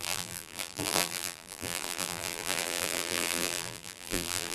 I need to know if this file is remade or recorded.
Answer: remade